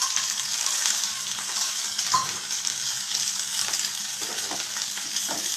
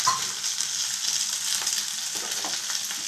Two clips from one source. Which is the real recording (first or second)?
second